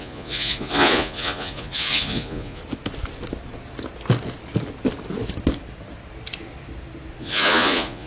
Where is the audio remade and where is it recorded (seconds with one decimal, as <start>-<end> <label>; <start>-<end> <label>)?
0.0-2.6 remade; 2.6-7.2 recorded; 7.2-8.1 remade